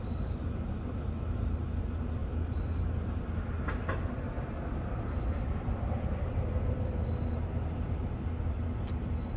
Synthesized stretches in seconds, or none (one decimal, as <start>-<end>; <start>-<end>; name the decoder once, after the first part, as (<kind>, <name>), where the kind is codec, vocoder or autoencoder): none